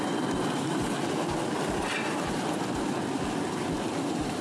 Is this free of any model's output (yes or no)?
yes